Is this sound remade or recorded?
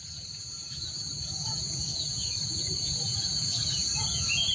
remade